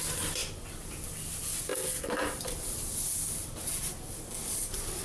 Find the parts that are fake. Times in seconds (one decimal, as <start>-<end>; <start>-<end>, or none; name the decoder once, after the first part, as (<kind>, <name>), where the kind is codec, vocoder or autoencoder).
none